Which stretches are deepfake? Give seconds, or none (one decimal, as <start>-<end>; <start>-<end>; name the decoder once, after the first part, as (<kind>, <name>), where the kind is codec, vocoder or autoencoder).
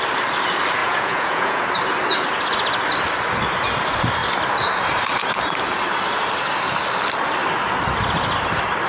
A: 0.8-1.7 (vocoder, Vocos)